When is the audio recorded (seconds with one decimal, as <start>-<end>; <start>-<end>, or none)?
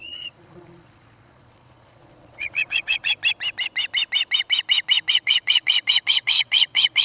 3.2-5.1